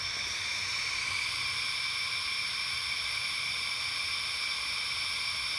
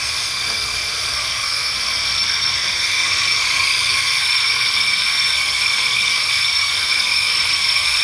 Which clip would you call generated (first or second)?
second